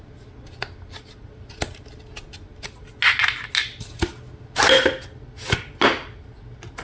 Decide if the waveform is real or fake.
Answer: real